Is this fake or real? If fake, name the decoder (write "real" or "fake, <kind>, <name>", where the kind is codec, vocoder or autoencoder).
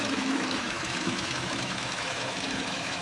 fake, autoencoder, DAC-VAE